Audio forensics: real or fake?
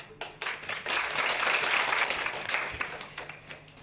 real